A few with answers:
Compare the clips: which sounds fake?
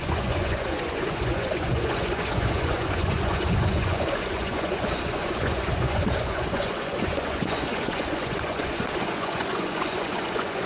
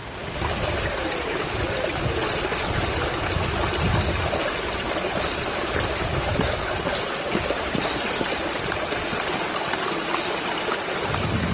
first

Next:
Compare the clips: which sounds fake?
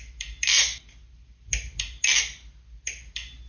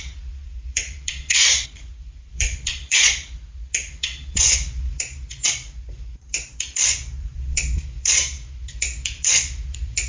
second